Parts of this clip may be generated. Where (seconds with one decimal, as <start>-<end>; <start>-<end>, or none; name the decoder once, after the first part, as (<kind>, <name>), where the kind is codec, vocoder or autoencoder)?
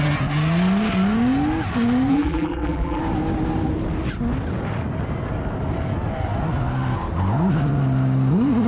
2.1-3.0 (vocoder, BigVGAN v2)